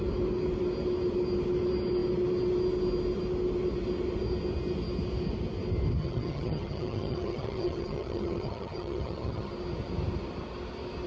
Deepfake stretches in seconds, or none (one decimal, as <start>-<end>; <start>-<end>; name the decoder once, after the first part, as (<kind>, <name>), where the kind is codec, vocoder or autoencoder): 6.0-9.5 (vocoder, HiFi-GAN)

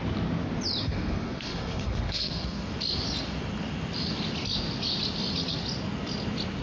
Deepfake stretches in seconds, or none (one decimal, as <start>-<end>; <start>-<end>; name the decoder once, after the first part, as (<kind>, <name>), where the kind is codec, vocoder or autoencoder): 0.8-2.7 (codec, SNAC)